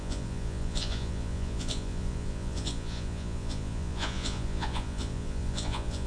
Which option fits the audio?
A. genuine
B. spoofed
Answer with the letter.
B